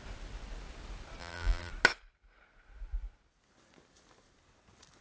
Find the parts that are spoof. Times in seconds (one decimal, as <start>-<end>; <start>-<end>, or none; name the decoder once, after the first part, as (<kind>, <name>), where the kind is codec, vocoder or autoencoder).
1.2-1.7 (vocoder, BigVGAN v2)